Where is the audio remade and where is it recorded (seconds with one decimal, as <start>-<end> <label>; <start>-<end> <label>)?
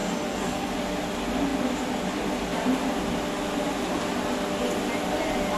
0.0-0.7 remade; 0.7-5.6 recorded